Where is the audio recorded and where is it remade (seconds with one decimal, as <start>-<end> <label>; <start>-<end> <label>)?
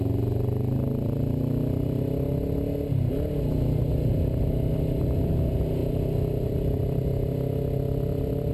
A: 0.0-8.5 recorded